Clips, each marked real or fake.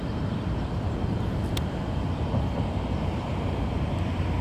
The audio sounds real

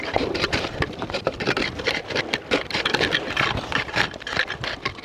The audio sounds fake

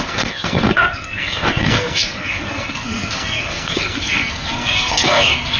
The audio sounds fake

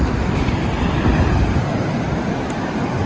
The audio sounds real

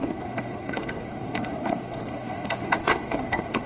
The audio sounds fake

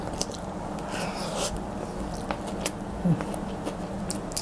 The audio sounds real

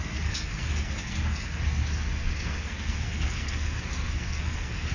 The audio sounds fake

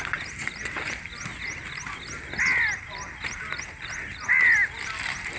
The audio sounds real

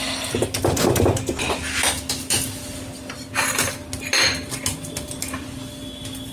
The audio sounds real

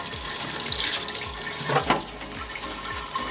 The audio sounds real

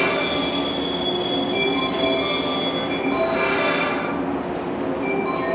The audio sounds real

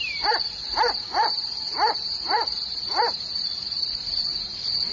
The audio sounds fake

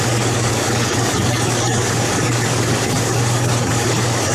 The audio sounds fake